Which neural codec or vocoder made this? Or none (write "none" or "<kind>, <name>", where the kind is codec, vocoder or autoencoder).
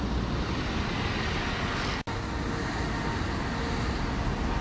none